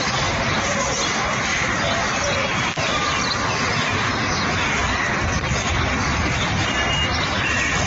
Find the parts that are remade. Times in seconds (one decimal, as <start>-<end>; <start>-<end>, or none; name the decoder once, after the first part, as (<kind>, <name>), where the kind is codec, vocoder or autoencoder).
0.0-1.5 (vocoder, BigVGAN v2); 5.8-7.9